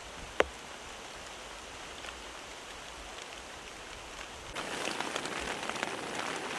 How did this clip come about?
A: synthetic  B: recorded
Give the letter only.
B